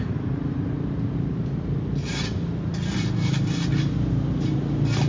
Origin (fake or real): real